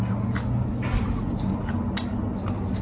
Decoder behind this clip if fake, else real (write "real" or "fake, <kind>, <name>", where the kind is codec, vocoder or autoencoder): real